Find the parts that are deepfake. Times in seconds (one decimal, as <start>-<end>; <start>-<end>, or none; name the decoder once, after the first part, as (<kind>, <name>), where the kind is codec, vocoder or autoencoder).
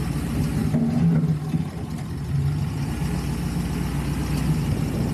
none